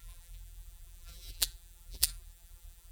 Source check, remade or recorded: remade